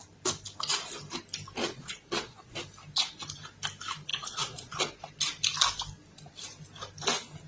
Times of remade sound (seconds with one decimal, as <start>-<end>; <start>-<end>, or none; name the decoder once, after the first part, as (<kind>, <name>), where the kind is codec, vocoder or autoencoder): 1.6-2.6 (vocoder, Vocos); 4.1-4.8